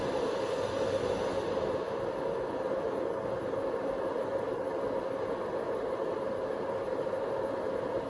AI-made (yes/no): no